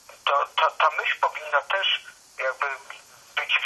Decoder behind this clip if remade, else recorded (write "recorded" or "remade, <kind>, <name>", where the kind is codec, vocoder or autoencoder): recorded